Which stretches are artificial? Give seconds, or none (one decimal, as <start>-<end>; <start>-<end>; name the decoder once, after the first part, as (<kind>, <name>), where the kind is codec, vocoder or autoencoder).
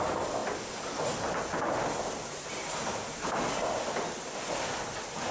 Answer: none